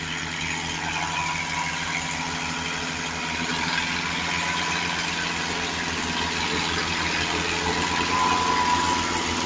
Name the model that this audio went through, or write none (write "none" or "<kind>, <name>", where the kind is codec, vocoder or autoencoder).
none